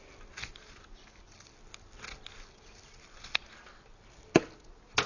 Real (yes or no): yes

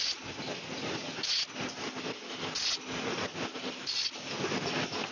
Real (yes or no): yes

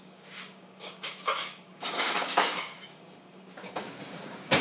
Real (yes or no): no